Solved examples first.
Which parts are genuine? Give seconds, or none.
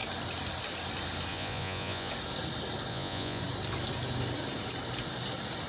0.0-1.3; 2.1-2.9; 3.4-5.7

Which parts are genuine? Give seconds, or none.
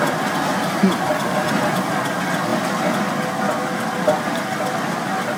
0.0-5.4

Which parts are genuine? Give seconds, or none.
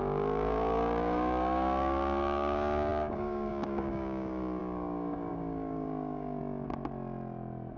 6.4-7.8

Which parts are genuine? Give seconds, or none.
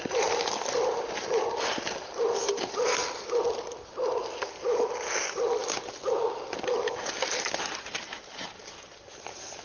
0.0-9.6